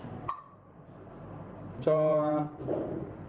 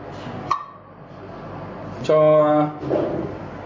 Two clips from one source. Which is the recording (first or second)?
second